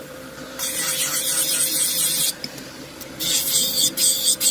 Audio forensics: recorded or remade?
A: remade